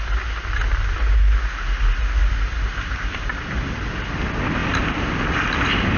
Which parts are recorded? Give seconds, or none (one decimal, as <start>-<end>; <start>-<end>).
0.0-2.2; 3.8-4.6; 5.5-6.0